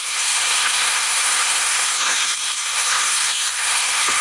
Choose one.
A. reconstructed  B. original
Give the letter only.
A